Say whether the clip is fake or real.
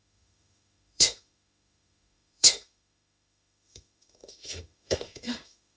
fake